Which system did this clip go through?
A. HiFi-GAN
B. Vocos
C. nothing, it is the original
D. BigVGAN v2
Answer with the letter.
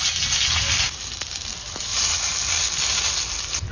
C